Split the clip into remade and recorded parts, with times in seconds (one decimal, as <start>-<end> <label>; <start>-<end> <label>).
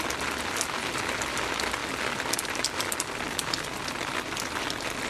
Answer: 0.0-5.1 recorded